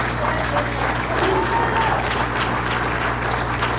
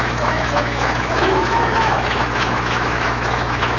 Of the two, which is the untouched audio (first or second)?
first